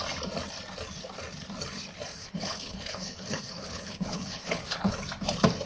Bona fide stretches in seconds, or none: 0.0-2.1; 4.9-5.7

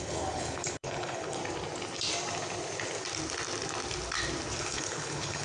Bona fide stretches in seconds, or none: 1.4-4.6

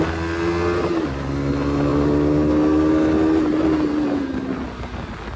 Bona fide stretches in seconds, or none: 0.0-5.4

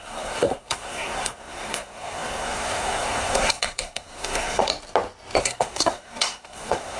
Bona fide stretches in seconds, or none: 4.7-5.4